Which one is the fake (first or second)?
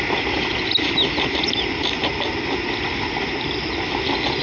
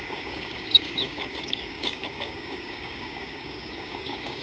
second